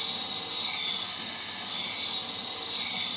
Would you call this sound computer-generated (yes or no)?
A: no